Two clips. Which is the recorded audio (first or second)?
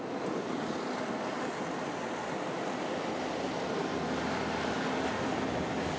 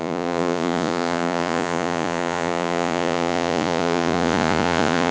first